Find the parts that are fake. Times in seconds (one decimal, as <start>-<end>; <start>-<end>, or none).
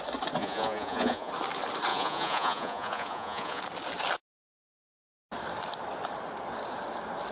0.4-1.3; 1.9-3.6